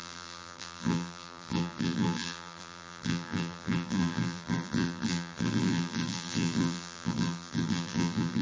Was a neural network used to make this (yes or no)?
yes